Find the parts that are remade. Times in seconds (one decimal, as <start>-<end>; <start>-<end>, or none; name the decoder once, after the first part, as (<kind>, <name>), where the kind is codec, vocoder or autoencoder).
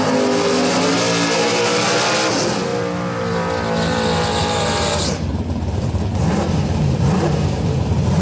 4.4-8.2 (vocoder, BigVGAN v2)